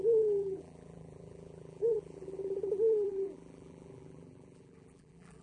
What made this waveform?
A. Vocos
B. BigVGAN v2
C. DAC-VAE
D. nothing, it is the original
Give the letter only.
B